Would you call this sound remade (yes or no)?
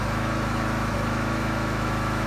yes